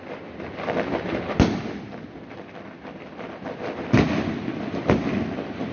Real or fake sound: fake